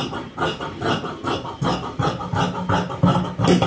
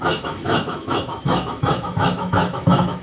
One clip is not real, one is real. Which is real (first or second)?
first